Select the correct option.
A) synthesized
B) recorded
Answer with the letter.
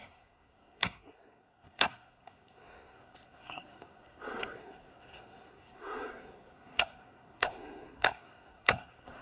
A